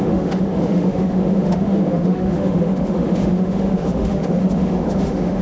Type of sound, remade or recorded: remade